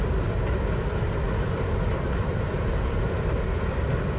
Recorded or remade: recorded